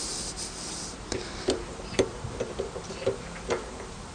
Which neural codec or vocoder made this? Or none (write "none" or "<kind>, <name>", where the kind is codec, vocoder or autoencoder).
none